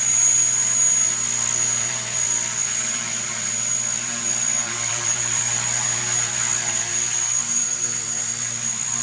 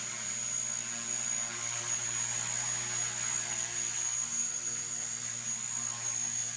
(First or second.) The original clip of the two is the second